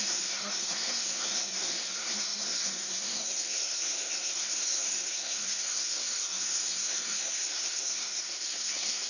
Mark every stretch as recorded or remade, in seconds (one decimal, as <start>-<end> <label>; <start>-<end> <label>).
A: 0.0-9.1 remade